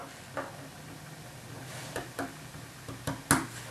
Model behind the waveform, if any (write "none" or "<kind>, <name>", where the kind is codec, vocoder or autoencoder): none